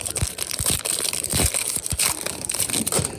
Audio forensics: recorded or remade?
remade